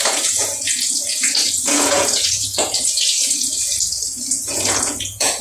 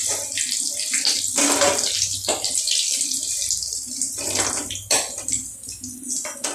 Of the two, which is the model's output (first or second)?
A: first